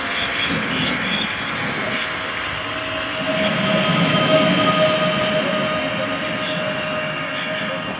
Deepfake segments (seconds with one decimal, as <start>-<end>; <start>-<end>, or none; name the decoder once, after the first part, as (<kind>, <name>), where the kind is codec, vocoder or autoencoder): 3.9-4.5 (autoencoder, DAC-VAE)